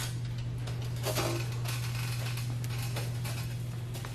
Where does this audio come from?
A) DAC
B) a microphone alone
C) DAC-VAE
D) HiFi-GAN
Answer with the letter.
B